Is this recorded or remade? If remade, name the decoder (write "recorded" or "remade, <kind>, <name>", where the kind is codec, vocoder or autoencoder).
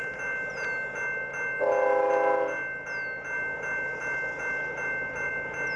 recorded